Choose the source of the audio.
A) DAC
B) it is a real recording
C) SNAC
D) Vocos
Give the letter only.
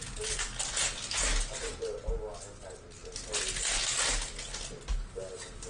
B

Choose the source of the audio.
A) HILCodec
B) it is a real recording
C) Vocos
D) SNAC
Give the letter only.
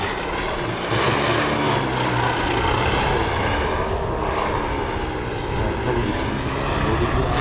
B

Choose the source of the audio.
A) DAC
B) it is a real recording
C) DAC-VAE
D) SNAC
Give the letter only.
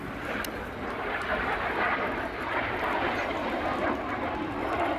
B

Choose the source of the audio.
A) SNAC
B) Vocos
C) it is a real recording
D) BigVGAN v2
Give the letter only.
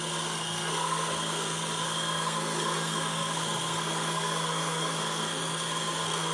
A